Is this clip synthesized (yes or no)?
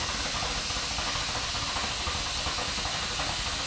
no